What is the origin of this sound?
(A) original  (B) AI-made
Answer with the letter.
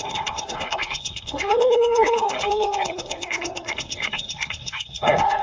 B